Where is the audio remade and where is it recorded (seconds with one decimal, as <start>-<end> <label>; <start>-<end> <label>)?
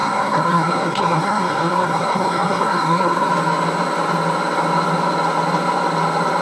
0.0-3.3 remade; 3.3-6.4 recorded